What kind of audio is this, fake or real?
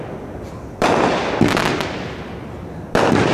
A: fake